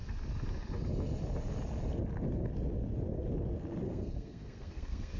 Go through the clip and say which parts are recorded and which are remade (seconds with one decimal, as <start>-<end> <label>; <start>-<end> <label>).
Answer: 0.0-3.9 recorded; 3.9-5.2 remade